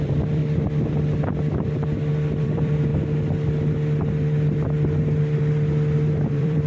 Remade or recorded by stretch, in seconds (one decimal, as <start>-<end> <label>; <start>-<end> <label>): 0.0-0.4 remade; 0.4-2.4 recorded; 2.4-2.9 remade; 2.9-6.3 recorded; 6.3-6.7 remade